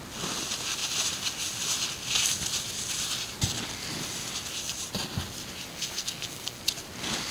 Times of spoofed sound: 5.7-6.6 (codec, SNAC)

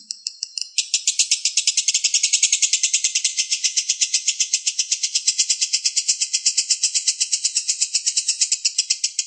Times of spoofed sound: 3.3-8.5 (vocoder, Vocos)

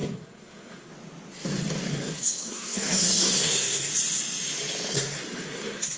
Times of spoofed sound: 0.0-0.9 (codec, SNAC); 1.9-3.9; 4.9-6.0

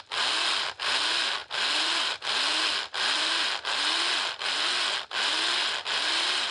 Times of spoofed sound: none

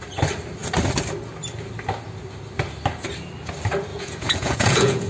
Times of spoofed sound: 3.9-5.1 (vocoder, Vocos)